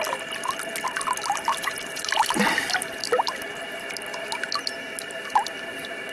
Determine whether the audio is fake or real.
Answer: real